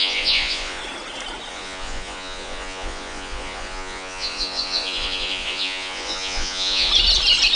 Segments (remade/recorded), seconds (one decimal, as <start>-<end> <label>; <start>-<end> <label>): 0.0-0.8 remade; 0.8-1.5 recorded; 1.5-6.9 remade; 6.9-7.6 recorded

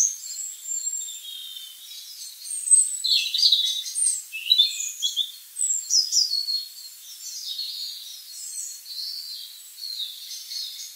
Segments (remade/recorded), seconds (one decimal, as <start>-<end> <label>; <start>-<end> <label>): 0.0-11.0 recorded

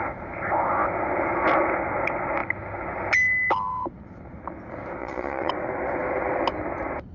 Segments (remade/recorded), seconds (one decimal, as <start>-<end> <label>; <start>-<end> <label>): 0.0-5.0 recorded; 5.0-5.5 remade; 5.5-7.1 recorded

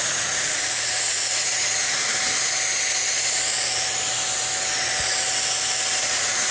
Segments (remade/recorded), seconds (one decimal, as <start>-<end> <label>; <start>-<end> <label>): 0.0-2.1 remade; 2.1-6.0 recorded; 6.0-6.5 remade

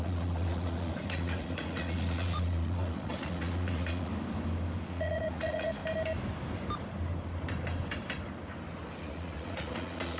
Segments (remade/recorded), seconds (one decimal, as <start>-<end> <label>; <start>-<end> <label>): 0.0-4.1 remade; 4.1-4.8 recorded; 4.8-5.8 remade; 5.8-9.0 recorded; 9.0-10.2 remade

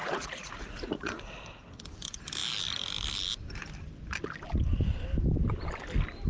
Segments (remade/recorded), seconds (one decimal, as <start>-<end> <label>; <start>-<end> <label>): 0.0-1.3 remade; 1.3-6.3 recorded

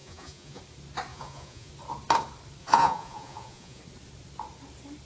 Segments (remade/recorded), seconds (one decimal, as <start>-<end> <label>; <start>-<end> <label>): 0.0-0.6 remade; 0.6-1.1 recorded; 1.1-1.7 remade; 1.7-2.6 recorded; 2.6-3.8 remade; 3.8-5.1 recorded

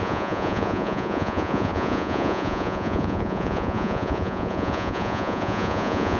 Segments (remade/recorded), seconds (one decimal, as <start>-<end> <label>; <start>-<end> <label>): 0.0-6.2 remade